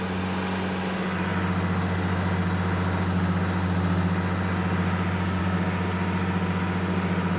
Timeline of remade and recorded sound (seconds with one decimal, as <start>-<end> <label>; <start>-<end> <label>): 0.0-7.4 recorded